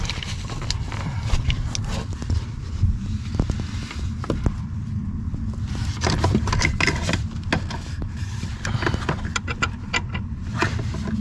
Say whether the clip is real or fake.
real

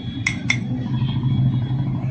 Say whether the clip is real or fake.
real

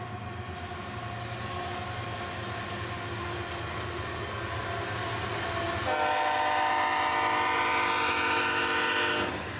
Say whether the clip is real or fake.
real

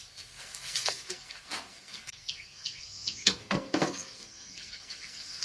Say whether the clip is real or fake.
fake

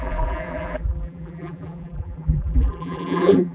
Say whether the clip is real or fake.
fake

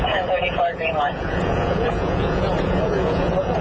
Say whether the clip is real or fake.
fake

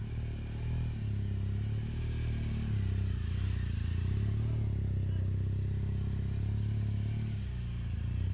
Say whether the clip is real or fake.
real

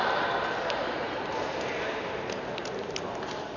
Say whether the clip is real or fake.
real